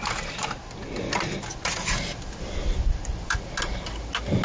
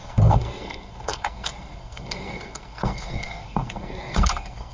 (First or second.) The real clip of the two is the first